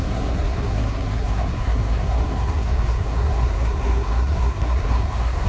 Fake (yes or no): yes